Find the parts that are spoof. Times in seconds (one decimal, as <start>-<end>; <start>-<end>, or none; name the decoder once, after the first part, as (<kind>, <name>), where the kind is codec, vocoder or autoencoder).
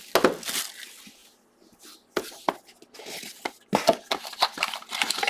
none